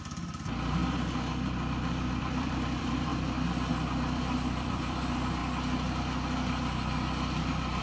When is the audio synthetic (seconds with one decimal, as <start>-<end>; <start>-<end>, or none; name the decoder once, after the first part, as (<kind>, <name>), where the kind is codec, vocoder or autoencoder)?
0.0-0.8 (vocoder, BigVGAN v2); 2.1-3.1; 3.7-5.4